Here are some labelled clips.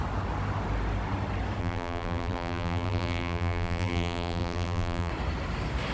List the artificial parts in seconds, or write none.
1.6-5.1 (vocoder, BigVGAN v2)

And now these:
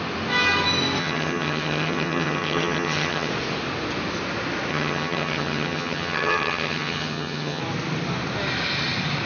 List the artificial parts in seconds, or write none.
1.0-3.3 (vocoder, HiFi-GAN); 4.7-7.6

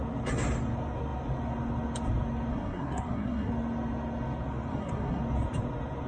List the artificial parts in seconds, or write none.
2.5-3.5 (codec, SNAC); 4.7-5.2

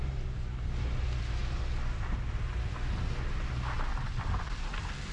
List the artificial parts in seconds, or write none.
none

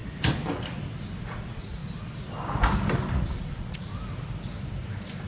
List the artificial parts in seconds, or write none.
1.2-1.8 (vocoder, Vocos); 3.1-3.9

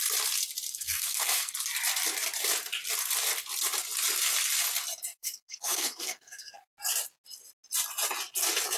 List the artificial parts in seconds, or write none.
0.7-1.5 (codec, SNAC); 5.1-6.7

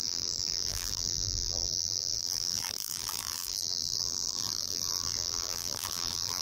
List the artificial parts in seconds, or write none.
0.0-6.4 (vocoder, BigVGAN v2)

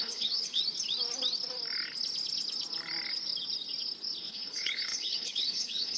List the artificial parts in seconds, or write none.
0.0-0.6 (codec, HILCodec); 4.2-6.0